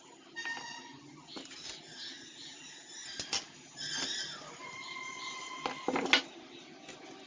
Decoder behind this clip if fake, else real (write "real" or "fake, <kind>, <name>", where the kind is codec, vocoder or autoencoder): real